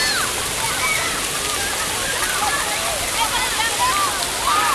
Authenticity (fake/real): real